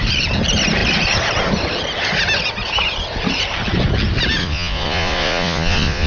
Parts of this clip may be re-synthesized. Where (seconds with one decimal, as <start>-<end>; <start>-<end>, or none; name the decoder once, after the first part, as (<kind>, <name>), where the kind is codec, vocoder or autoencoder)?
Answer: 4.4-6.1 (vocoder, Vocos)